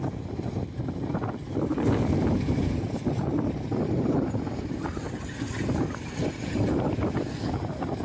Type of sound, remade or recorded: recorded